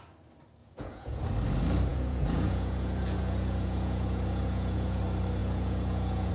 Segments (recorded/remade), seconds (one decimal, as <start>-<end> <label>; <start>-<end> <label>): 0.0-0.6 recorded; 0.6-1.2 remade; 1.2-1.9 recorded; 1.9-5.0 remade; 5.0-5.4 recorded; 5.4-6.3 remade